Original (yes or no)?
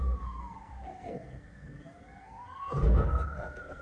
no